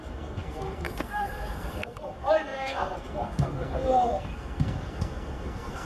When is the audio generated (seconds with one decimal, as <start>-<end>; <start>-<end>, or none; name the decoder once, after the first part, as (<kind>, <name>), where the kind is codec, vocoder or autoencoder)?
0.0-5.9 (codec, SNAC)